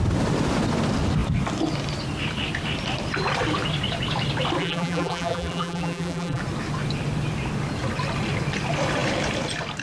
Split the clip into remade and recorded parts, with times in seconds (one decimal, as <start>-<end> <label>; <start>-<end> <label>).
0.0-4.6 recorded; 4.6-6.4 remade; 6.4-9.8 recorded